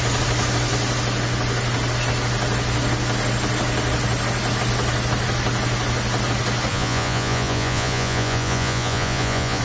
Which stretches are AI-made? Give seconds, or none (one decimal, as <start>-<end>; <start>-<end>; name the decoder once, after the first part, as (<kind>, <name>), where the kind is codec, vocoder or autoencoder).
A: 6.7-9.6 (vocoder, Vocos)